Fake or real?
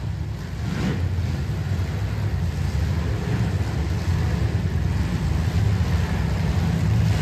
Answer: real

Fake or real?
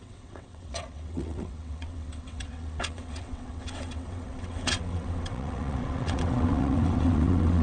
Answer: fake